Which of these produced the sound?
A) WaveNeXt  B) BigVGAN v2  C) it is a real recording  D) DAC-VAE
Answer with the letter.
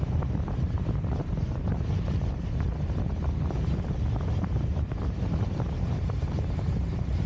B